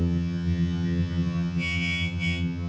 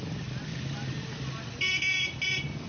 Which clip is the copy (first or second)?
first